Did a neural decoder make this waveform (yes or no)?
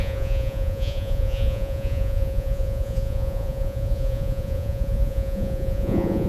yes